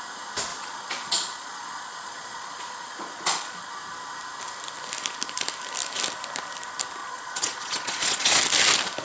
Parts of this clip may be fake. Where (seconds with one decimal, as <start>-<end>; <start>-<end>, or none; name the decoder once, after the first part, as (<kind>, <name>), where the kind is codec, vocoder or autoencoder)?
0.5-3.7 (vocoder, Vocos); 7.0-8.4